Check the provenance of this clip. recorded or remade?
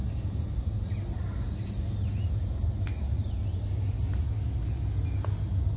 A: recorded